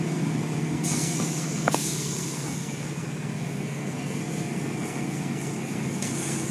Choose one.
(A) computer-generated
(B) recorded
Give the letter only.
A